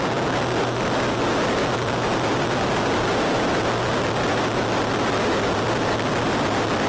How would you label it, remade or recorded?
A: recorded